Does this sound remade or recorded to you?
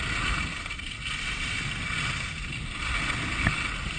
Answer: recorded